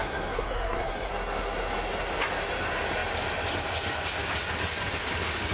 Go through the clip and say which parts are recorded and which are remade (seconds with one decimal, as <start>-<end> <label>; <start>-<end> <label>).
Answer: 0.0-1.1 remade; 1.1-5.5 recorded